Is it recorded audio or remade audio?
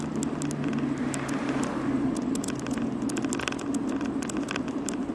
recorded